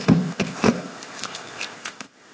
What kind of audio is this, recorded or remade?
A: remade